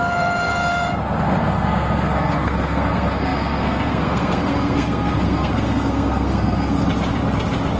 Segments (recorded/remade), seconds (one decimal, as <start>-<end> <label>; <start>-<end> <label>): 0.0-0.5 remade; 0.5-1.4 recorded; 1.4-6.8 remade; 6.8-7.8 recorded